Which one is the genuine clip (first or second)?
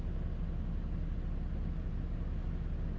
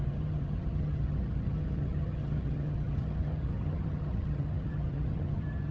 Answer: first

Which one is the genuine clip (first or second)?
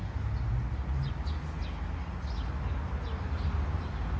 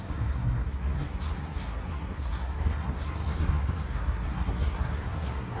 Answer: first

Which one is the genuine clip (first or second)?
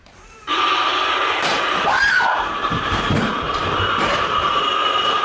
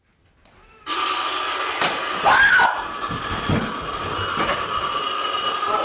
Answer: second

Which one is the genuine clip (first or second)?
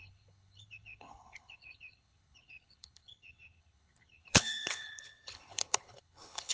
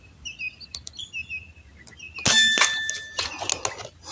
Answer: second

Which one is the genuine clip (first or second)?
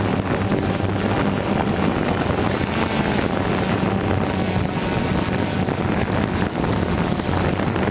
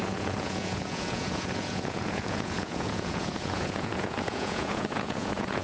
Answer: first